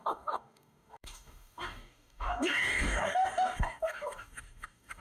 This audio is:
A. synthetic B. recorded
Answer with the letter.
A